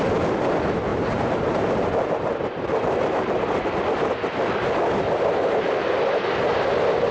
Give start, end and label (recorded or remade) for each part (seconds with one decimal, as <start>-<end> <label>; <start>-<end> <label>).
0.0-0.9 recorded; 0.9-3.7 remade; 3.7-7.1 recorded